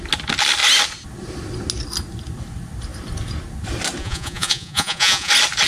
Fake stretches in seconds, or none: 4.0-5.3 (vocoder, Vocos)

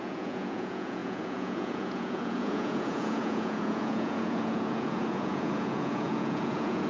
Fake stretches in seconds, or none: 0.0-6.9 (vocoder, Vocos)

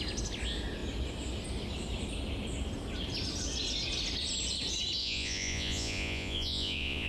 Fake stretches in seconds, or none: 5.0-7.1 (vocoder, Vocos)

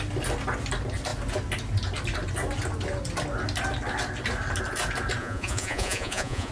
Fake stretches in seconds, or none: 5.2-6.5 (vocoder, Vocos)

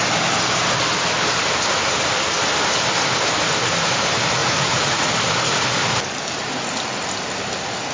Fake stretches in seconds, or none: 4.4-5.1 (vocoder, Vocos)

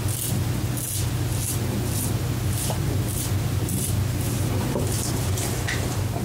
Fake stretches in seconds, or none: none

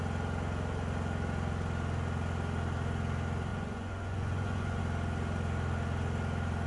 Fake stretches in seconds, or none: 3.5-4.8 (vocoder, Vocos)

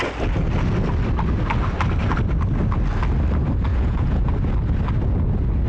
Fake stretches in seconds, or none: 3.7-4.3 (vocoder, Vocos)